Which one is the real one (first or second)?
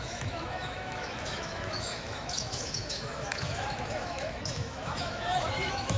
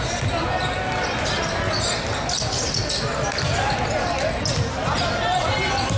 second